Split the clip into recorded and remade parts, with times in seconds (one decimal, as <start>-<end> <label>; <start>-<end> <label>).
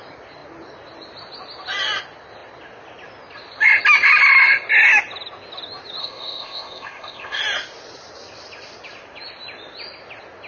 0.0-6.0 recorded; 6.0-7.4 remade; 7.4-10.5 recorded